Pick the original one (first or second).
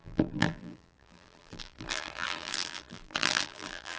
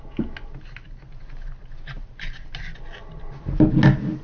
second